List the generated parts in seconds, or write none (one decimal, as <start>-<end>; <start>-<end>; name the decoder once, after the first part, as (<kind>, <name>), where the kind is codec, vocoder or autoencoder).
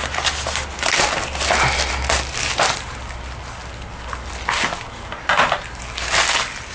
none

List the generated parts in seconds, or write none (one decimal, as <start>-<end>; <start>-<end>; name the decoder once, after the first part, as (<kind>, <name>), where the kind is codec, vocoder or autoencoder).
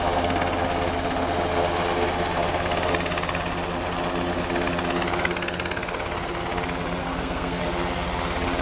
7.0-7.6 (codec, SNAC)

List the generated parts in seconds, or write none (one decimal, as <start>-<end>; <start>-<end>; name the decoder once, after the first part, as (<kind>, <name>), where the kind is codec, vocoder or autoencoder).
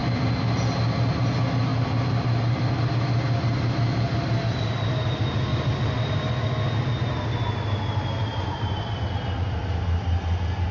0.0-0.6 (vocoder, BigVGAN v2); 1.7-2.9; 5.5-6.3; 8.3-9.6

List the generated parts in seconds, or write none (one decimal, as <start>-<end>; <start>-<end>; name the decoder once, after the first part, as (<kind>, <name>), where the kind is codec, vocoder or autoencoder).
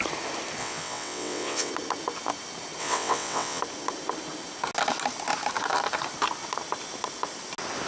0.6-1.7 (vocoder, WaveNeXt); 2.8-3.6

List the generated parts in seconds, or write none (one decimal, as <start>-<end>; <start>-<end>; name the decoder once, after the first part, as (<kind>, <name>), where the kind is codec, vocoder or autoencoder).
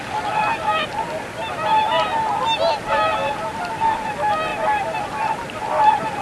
none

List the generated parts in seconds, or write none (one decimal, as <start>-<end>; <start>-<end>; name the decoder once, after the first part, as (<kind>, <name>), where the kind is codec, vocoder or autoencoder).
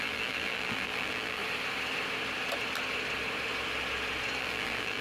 0.0-1.4 (vocoder, BigVGAN v2); 4.4-5.0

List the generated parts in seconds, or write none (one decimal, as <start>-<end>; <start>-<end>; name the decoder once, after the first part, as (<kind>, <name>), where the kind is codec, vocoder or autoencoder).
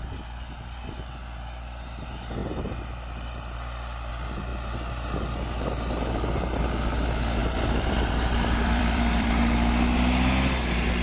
2.4-4.1 (vocoder, BigVGAN v2); 7.4-9.4